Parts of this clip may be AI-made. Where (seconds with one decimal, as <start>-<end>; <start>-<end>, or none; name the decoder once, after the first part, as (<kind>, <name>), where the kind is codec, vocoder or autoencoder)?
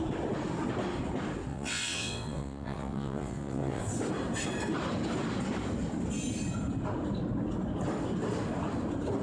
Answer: 1.5-3.8 (vocoder, WaveNeXt)